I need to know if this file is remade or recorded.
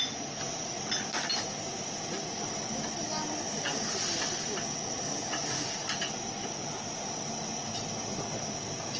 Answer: recorded